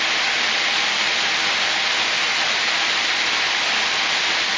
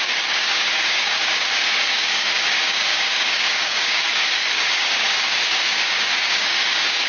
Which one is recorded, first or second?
first